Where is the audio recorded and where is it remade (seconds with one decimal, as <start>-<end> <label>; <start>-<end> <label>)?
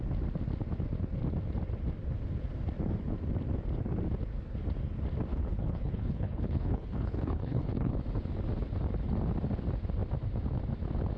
0.0-5.3 recorded; 5.3-7.9 remade; 7.9-11.2 recorded